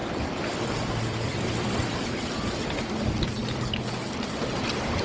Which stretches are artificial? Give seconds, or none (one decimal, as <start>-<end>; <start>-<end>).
0.0-3.0; 3.4-3.9

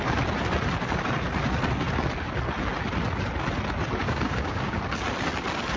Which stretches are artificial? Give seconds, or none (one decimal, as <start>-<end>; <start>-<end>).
4.0-4.8

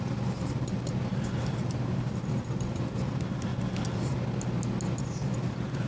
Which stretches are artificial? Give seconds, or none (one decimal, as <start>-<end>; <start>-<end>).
none

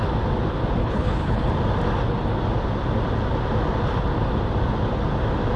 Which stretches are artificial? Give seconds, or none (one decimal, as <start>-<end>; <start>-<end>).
0.8-1.5